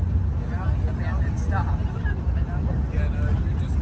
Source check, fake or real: real